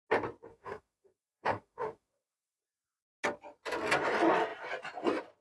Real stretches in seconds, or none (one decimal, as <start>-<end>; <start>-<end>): 0.0-0.5; 2.6-5.4

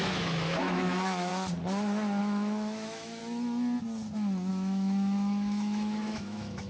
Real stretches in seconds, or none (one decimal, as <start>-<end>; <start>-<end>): 1.3-2.2; 3.2-4.5

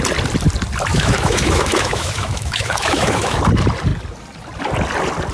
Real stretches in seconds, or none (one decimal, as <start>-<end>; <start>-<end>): 0.0-0.9; 3.4-5.3

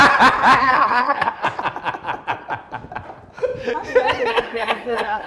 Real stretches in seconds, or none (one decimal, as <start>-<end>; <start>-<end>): 0.0-0.6; 1.4-4.3

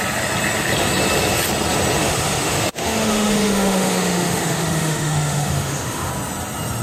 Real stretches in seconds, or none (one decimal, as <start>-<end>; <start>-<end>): 0.0-2.0; 6.1-6.8

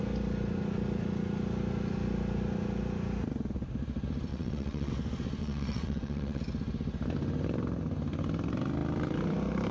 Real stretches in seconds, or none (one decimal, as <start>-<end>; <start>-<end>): 0.0-4.3; 4.9-5.4; 6.4-9.7